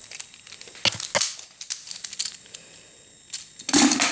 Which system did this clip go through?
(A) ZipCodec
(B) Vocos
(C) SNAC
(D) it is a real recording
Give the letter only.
D